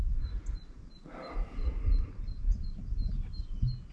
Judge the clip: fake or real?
real